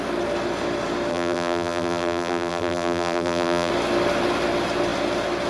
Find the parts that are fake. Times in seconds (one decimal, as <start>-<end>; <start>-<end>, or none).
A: 1.1-3.7